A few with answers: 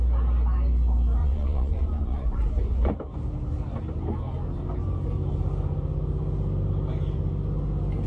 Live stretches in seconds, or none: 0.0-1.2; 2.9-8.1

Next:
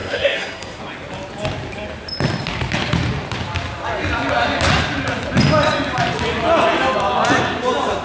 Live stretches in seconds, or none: 0.8-8.0

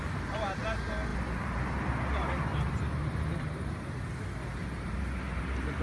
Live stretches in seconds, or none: 0.6-1.1; 1.9-2.5; 3.8-4.6

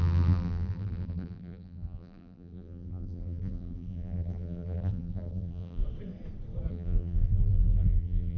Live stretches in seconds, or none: 5.8-6.7

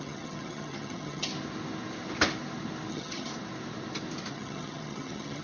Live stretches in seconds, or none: 1.3-2.9; 3.3-4.3